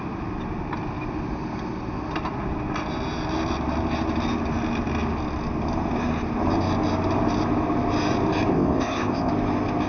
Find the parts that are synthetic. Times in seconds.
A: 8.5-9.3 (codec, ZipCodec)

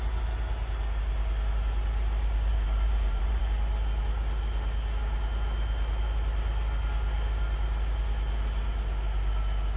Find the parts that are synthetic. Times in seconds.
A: 2.5-3.4 (vocoder, BigVGAN v2)

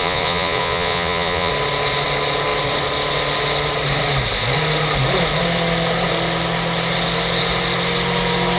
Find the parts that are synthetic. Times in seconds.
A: 0.0-1.5 (vocoder, Vocos)

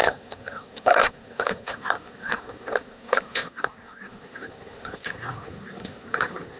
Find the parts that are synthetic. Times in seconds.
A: 0.0-6.6 (codec, SNAC)